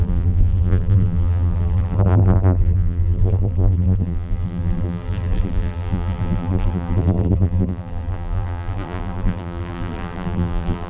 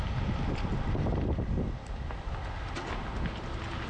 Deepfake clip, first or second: first